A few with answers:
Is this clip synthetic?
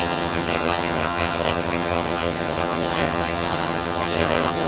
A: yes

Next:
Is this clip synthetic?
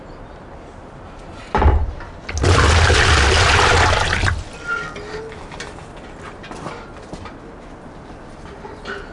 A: no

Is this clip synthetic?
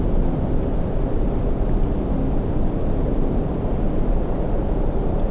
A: no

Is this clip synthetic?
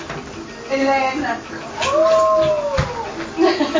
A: no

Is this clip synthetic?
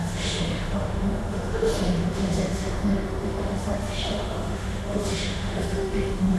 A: yes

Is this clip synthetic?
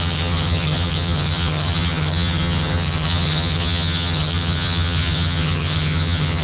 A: yes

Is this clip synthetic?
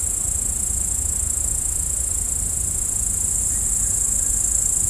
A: no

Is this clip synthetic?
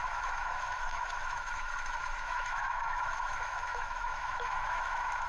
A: yes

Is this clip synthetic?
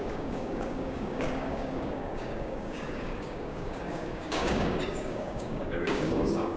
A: yes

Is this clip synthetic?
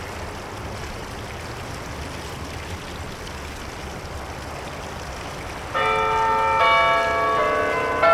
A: no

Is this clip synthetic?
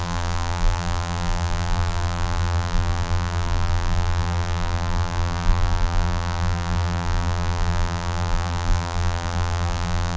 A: yes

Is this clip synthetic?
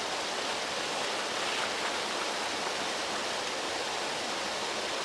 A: no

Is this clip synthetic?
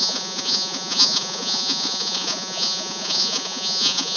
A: yes